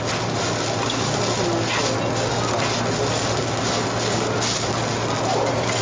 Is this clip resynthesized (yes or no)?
no